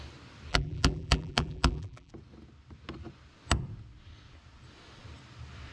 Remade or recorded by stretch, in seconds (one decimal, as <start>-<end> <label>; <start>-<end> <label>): 0.0-0.5 recorded; 0.5-2.1 remade; 2.1-5.7 recorded